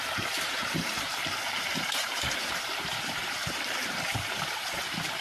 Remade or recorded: remade